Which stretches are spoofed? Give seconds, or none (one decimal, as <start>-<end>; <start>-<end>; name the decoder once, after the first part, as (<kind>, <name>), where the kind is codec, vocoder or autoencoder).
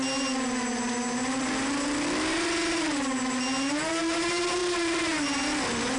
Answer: none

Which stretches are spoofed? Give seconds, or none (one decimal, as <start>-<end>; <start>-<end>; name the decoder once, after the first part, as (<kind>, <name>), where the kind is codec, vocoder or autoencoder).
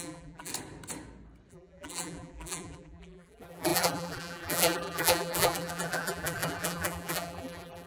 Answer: 0.0-0.5 (vocoder, BigVGAN v2); 1.5-7.9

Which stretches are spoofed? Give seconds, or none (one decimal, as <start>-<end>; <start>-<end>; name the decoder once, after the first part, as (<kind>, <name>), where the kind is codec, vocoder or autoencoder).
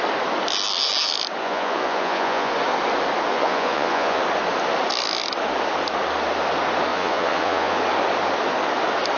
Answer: 1.4-2.5 (vocoder, Vocos); 3.3-4.2; 6.9-7.8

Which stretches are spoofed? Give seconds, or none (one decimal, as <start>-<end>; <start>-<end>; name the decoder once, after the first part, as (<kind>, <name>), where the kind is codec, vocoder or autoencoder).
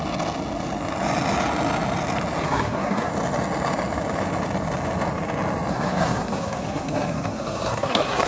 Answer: 2.4-3.1 (codec, SNAC); 5.7-8.3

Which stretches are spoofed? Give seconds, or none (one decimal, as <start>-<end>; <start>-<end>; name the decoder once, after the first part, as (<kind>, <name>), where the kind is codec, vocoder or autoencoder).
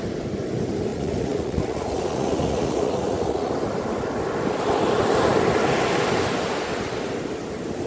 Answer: 0.9-3.5 (vocoder, Vocos)